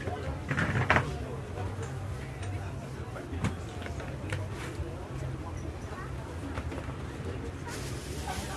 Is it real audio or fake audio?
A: real